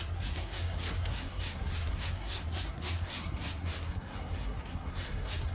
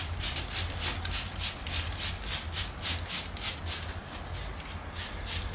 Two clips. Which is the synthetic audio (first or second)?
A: first